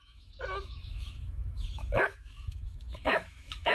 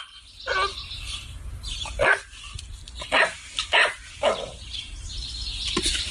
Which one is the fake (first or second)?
first